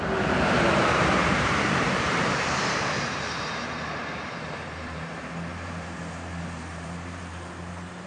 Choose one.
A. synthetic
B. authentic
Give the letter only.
A